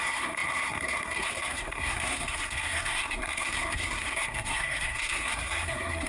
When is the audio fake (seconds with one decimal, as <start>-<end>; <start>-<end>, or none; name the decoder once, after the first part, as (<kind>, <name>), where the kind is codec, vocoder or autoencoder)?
0.0-6.1 (codec, SNAC)